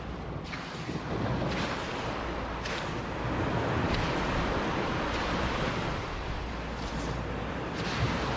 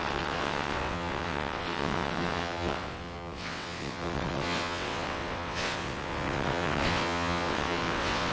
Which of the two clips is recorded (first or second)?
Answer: first